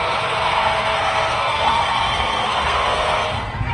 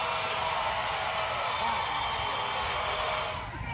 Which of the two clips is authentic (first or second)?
second